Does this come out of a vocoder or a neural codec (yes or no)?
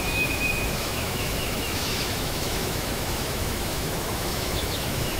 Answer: yes